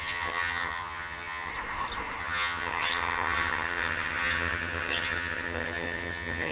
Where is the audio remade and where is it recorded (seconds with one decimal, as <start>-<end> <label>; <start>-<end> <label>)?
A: 0.0-1.5 remade; 1.5-2.2 recorded; 2.2-6.5 remade